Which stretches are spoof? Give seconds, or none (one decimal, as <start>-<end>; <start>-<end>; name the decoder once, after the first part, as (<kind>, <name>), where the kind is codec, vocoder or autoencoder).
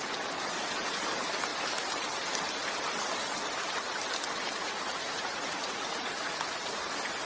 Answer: 4.6-6.8 (vocoder, Vocos)